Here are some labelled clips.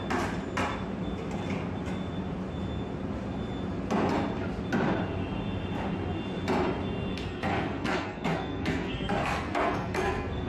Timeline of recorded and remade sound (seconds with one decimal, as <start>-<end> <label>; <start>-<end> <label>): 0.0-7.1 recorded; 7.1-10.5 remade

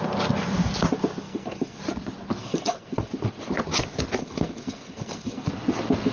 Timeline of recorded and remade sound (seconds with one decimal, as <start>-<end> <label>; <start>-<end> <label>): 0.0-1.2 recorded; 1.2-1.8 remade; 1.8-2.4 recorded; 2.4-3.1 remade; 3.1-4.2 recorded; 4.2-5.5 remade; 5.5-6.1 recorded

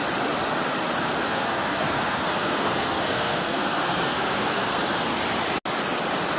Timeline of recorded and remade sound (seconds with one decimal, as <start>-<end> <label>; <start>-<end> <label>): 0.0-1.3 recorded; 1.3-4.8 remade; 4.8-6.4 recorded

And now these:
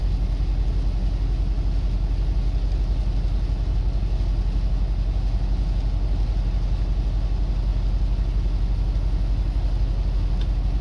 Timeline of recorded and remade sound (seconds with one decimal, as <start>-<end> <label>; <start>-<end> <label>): 0.0-10.8 recorded

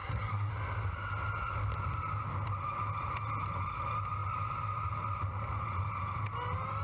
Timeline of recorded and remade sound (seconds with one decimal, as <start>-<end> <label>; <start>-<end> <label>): 0.0-0.5 remade; 0.5-6.8 recorded

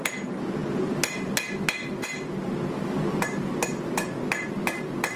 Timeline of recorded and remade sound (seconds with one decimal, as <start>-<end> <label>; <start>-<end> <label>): 0.0-5.2 recorded

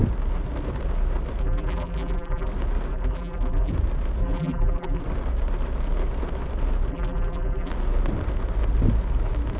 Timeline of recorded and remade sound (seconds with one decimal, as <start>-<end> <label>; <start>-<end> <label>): 0.0-1.4 recorded; 1.4-2.5 remade; 2.5-2.9 recorded; 2.9-3.7 remade; 3.7-4.2 recorded; 4.2-5.0 remade; 5.0-6.9 recorded; 6.9-7.7 remade; 7.7-9.6 recorded